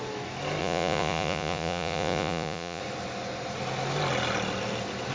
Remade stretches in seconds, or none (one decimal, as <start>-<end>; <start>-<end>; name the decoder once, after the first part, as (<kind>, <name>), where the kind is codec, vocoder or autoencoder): 0.6-2.8 (vocoder, Vocos)